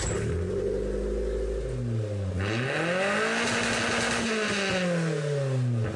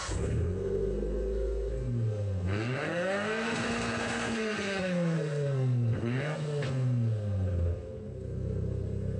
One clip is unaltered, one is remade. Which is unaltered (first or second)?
first